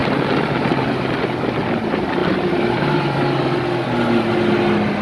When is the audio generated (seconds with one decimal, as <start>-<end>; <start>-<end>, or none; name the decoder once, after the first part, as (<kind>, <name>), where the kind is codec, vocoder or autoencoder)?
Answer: none